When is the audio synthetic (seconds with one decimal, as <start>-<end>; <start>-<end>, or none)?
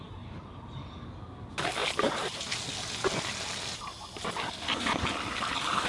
1.8-2.5